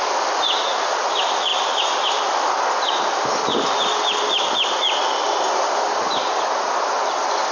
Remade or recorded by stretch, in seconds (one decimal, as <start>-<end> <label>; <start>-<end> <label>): 0.0-1.5 recorded; 1.5-6.0 remade; 6.0-7.5 recorded